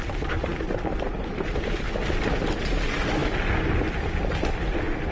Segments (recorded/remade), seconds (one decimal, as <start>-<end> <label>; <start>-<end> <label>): 0.0-0.5 recorded; 0.5-2.6 remade; 2.6-5.1 recorded